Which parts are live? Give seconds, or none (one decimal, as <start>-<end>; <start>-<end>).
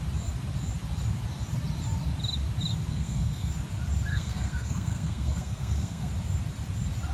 0.0-2.9; 3.5-4.1; 6.1-7.1